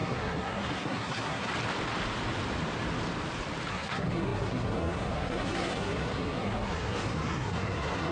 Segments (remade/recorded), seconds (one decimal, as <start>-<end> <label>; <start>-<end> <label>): 0.0-1.5 remade; 1.5-3.7 recorded; 3.7-8.1 remade